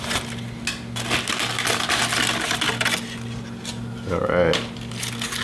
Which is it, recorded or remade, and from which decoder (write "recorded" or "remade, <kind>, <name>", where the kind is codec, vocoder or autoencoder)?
recorded